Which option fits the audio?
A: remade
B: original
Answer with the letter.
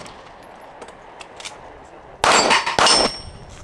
B